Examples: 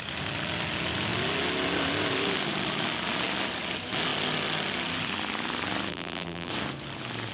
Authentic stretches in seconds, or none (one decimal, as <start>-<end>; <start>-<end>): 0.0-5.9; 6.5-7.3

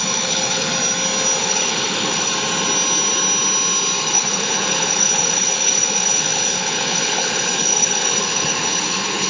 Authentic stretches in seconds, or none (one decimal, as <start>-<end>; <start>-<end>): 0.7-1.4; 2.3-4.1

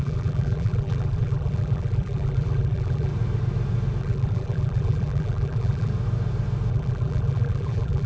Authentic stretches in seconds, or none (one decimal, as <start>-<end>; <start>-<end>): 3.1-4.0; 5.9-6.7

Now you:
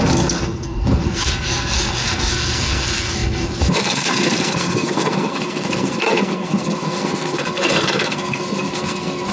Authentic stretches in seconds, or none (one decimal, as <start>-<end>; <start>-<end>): none

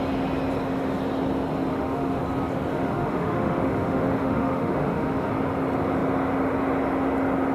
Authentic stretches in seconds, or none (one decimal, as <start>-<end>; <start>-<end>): 0.0-1.7; 2.2-2.7; 5.3-7.5